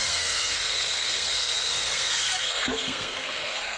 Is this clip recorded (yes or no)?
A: no